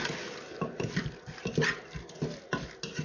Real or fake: real